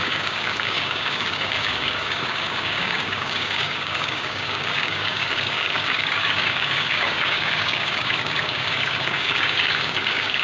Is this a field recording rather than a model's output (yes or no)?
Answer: no